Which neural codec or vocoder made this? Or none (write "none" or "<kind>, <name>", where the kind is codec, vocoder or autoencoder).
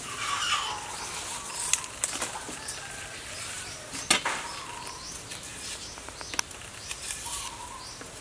none